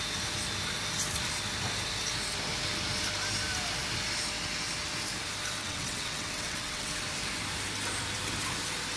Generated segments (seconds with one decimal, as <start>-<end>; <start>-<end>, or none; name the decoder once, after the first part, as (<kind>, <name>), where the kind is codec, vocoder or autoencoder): 5.6-7.0 (vocoder, WaveNeXt)

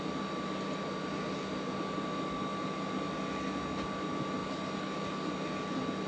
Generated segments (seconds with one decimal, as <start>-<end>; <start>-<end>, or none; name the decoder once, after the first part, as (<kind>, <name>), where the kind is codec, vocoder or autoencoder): none

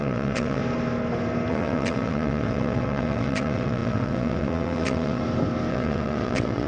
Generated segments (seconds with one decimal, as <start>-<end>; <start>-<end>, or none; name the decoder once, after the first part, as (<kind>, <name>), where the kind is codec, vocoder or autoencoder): 0.0-0.6 (vocoder, WaveNeXt); 1.5-5.2; 5.7-6.7

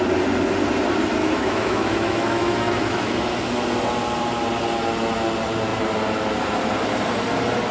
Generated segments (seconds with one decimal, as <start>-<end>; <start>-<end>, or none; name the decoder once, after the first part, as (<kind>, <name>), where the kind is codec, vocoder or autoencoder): 1.2-3.1 (autoencoder, DAC-VAE)

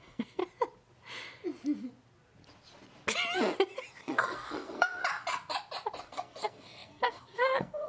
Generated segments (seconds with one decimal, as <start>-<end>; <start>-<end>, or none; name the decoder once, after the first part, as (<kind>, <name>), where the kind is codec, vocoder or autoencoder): 0.0-0.4 (codec, SNAC); 4.0-5.0; 6.1-7.9

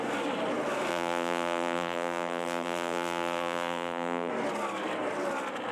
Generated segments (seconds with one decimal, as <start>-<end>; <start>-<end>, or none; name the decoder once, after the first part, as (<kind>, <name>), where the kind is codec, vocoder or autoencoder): 0.9-4.3 (vocoder, BigVGAN v2)

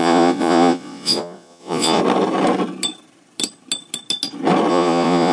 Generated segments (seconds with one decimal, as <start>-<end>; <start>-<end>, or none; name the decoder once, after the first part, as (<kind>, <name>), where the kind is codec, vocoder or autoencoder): 0.0-2.0 (vocoder, Vocos); 4.7-5.3